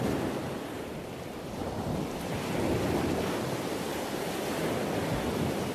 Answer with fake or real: real